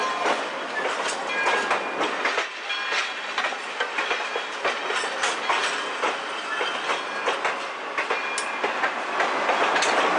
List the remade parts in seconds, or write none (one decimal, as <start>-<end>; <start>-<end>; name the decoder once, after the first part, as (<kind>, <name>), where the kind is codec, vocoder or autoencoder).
none